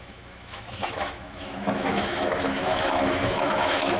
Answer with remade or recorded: remade